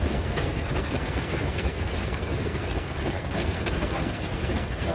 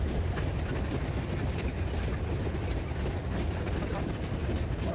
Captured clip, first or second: second